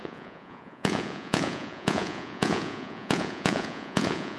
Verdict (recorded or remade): remade